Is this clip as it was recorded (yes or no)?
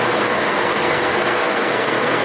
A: no